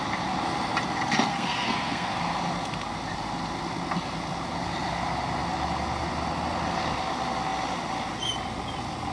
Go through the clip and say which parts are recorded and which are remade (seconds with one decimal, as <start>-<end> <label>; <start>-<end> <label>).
0.0-1.3 recorded; 1.3-2.2 remade; 2.2-9.1 recorded